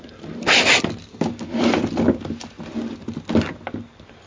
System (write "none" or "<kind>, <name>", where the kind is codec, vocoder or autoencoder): none